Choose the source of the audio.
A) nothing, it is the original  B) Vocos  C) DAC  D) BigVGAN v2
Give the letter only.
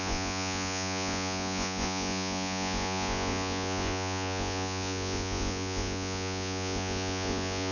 B